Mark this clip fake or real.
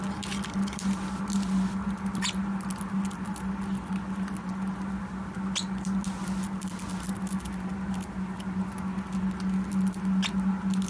real